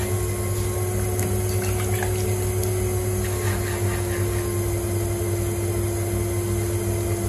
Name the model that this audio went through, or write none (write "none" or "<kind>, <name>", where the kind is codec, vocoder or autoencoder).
none